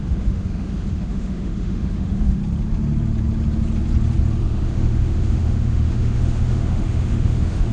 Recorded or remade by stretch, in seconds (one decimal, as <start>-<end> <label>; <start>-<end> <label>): 0.0-2.4 remade; 2.4-4.4 recorded; 4.4-7.7 remade